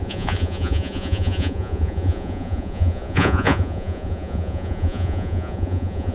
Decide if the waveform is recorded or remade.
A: remade